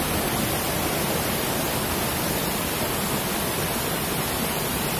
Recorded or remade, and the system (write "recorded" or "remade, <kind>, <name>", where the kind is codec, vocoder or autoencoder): recorded